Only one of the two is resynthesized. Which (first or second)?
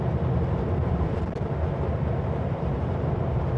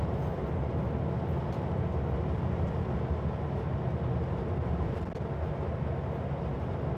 first